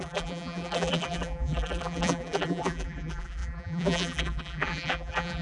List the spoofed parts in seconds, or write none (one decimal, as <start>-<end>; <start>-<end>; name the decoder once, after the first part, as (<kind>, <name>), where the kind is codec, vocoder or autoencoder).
0.0-5.4 (vocoder, BigVGAN v2)